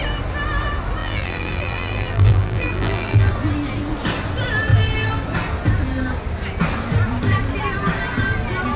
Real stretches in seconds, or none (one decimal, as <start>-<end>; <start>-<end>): 0.0-1.0; 3.3-8.8